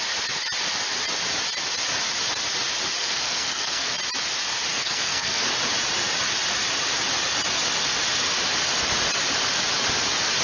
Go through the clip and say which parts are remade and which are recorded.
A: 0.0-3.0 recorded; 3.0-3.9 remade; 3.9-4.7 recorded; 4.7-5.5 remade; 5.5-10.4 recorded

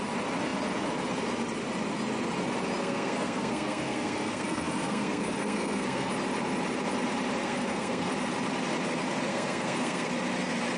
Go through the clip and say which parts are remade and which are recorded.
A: 0.0-2.8 recorded; 2.8-6.1 remade; 6.1-7.4 recorded; 7.4-8.1 remade; 8.1-9.3 recorded; 9.3-10.1 remade; 10.1-10.8 recorded

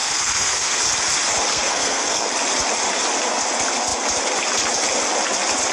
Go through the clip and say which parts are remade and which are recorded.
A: 0.0-0.8 remade; 0.8-1.5 recorded; 1.5-2.3 remade; 2.3-5.7 recorded